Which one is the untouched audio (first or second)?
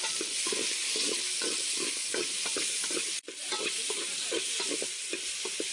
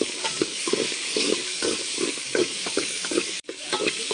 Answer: first